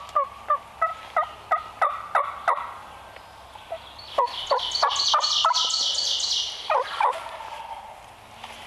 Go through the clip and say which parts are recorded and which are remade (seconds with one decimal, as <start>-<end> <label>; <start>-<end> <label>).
0.0-8.7 recorded